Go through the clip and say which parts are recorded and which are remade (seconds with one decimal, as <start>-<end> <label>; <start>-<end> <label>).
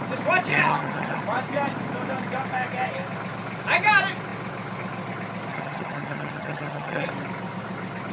0.0-0.5 recorded; 0.5-1.2 remade; 1.2-5.5 recorded; 5.5-7.1 remade; 7.1-8.1 recorded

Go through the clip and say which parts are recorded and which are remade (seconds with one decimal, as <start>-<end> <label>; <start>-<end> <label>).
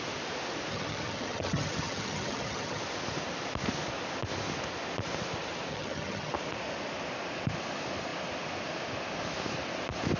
0.0-0.7 recorded; 0.7-2.8 remade; 2.8-5.7 recorded; 5.7-6.3 remade; 6.3-10.2 recorded